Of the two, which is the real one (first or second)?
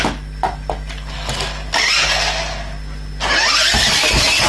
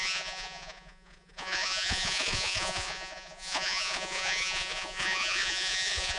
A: first